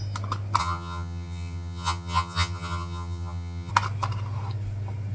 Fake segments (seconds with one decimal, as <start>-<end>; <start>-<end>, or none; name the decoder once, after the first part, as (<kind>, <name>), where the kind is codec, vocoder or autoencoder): 0.6-3.7 (vocoder, HiFi-GAN)